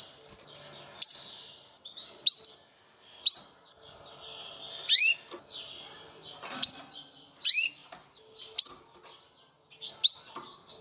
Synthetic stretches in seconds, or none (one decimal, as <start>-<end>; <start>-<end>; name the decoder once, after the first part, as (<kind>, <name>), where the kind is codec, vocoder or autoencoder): none